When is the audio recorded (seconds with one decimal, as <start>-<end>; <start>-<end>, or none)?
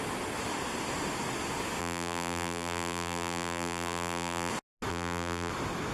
0.0-1.8; 4.5-4.9; 5.5-5.9